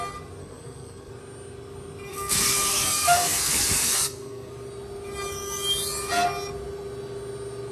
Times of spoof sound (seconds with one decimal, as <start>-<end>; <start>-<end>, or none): 0.4-1.1; 2.1-4.5